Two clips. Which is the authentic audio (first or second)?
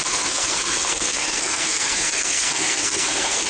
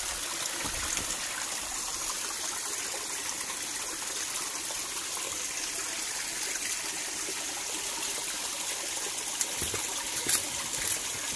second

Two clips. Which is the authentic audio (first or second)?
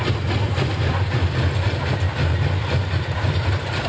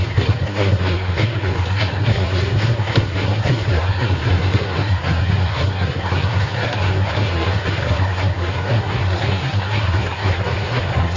first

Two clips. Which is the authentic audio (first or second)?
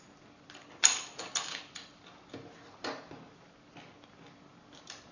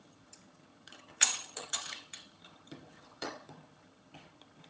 first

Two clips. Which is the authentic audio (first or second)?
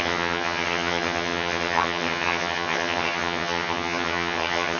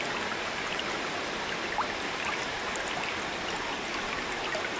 second